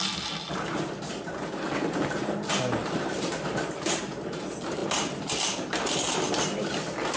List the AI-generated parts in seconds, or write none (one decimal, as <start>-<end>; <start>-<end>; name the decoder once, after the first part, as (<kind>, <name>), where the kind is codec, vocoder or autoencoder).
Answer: 2.8-3.5 (vocoder, BigVGAN v2)